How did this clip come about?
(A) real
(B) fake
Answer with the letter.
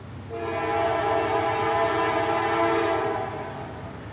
A